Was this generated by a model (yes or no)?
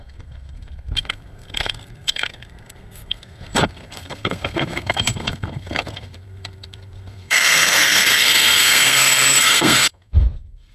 yes